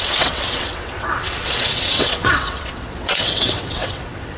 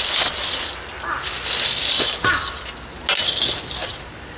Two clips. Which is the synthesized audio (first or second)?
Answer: first